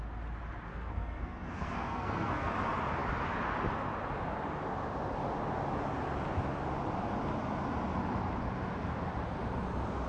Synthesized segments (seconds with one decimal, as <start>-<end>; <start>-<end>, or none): 0.7-2.5